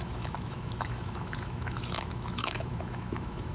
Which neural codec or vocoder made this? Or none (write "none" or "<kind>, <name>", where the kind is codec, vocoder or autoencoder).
autoencoder, DAC-VAE